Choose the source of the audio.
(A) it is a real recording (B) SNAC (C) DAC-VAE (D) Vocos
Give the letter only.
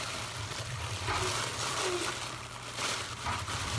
A